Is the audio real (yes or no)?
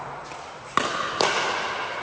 yes